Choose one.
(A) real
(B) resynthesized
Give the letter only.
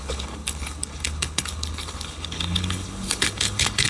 B